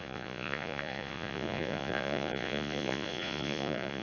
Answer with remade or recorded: remade